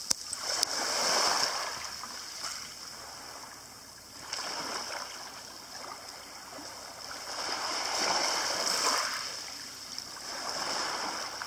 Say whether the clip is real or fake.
real